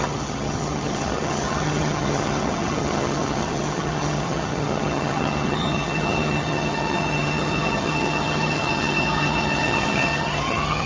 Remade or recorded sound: remade